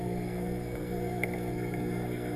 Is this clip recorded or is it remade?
remade